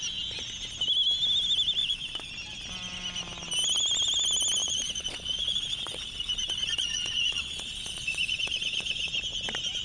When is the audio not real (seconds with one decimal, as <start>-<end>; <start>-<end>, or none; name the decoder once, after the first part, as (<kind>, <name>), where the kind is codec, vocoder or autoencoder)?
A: 1.8-2.3 (vocoder, Vocos); 4.6-9.1